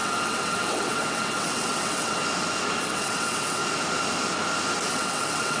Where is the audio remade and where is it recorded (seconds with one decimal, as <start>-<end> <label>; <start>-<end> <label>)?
0.0-2.2 remade; 2.2-2.8 recorded; 2.8-3.6 remade; 3.6-4.9 recorded; 4.9-5.6 remade